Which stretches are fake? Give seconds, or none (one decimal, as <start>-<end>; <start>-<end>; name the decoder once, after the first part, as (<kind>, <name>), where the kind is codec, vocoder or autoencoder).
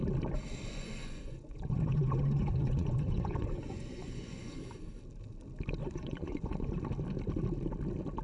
0.7-4.6 (vocoder, Vocos); 5.8-6.7